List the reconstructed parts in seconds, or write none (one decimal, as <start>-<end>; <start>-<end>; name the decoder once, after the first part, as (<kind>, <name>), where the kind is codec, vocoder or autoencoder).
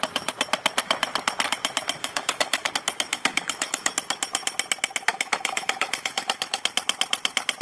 2.0-2.7 (autoencoder, DAC-VAE); 3.1-3.9; 5.1-6.6